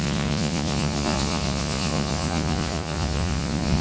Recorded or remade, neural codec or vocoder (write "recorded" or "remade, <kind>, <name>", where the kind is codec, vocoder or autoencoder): remade, vocoder, Vocos